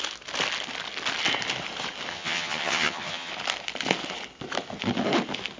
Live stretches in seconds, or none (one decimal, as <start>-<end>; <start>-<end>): 0.0-2.1; 3.3-5.6